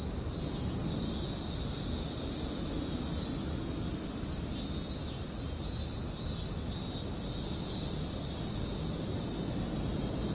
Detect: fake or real real